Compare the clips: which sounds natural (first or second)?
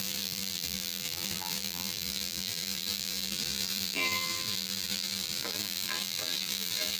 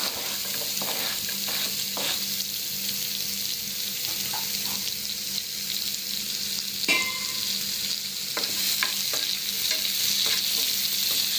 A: second